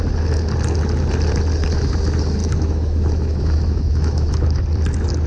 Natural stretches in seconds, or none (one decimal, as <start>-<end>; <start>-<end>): 0.0-2.4; 4.6-5.3